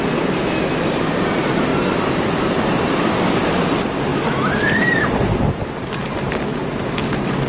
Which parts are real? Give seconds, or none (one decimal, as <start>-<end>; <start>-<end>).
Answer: 0.0-1.7; 2.2-4.1; 5.4-7.5